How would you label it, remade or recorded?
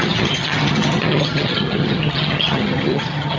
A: remade